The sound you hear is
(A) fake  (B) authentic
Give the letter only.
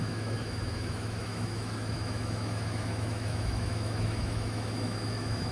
A